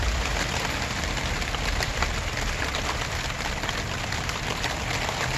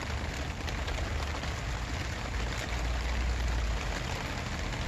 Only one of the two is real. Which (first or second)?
second